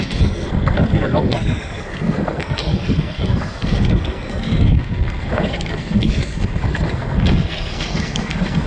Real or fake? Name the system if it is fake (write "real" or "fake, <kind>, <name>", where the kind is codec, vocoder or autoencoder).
fake, codec, SNAC